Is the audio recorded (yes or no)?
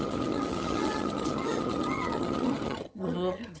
no